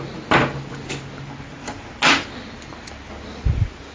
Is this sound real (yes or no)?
yes